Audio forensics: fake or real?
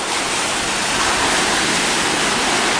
real